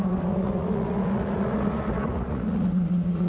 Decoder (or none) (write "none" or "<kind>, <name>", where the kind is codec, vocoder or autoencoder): vocoder, Vocos